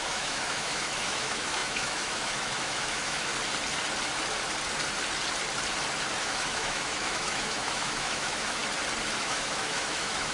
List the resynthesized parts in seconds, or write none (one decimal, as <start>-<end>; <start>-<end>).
0.0-3.3; 6.2-8.6; 9.2-10.3